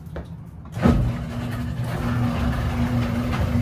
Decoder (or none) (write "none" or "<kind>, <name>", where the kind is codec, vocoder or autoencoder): none